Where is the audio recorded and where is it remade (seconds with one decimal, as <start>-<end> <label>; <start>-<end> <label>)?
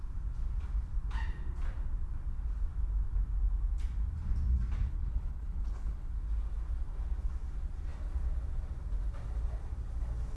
0.0-4.8 recorded; 4.8-6.1 remade; 6.1-10.4 recorded